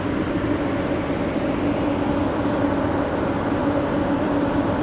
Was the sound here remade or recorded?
recorded